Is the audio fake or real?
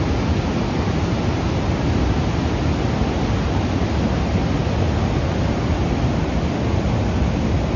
real